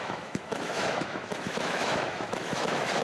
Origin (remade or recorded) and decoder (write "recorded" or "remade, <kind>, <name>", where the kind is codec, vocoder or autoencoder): remade, autoencoder, DAC-VAE